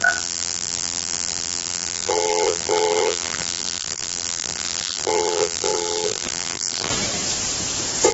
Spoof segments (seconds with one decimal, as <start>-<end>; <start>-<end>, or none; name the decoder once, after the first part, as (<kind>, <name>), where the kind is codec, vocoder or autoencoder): 0.0-6.9 (vocoder, BigVGAN v2)